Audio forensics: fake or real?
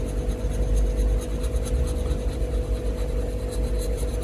real